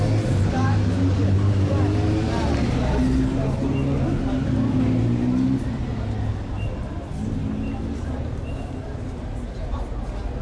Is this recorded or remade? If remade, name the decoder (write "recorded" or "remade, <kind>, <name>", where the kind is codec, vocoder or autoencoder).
recorded